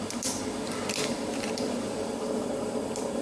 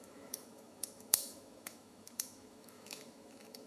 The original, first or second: first